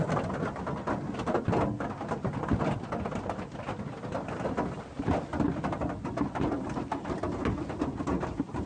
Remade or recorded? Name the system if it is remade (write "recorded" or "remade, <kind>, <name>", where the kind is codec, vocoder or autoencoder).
recorded